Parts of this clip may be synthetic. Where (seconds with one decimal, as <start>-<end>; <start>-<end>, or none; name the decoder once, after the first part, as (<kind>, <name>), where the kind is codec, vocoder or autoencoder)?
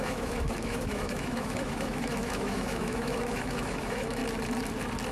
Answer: 0.0-4.2 (autoencoder, DAC-VAE)